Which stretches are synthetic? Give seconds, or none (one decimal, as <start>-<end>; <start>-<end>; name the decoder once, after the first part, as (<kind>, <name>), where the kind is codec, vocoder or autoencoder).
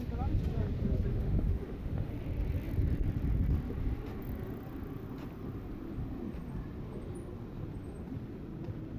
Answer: 1.1-2.1 (autoencoder, DAC-VAE)